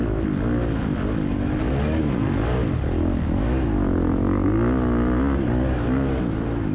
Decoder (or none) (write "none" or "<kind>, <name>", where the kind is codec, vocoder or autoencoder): none